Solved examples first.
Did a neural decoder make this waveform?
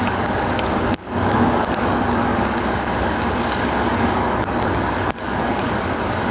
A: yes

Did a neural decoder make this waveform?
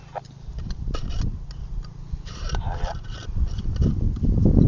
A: no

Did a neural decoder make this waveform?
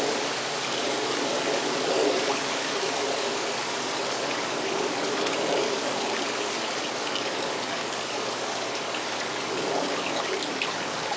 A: yes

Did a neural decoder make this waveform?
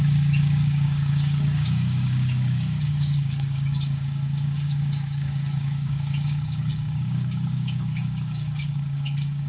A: yes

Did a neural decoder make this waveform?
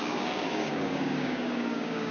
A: yes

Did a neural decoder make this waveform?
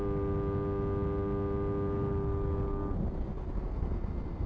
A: no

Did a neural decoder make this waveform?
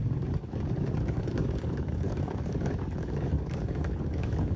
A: yes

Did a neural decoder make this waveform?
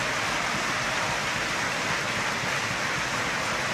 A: no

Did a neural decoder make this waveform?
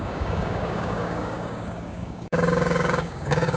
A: yes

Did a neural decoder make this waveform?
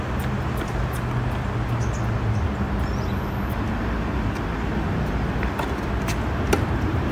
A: no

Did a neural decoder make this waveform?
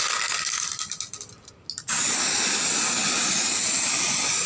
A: no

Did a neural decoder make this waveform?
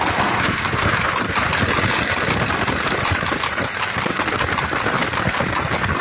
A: no